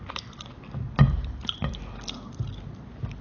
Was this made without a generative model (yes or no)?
yes